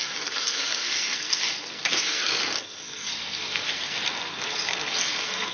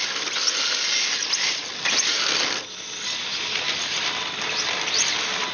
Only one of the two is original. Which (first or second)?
second